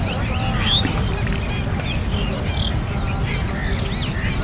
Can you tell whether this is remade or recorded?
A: recorded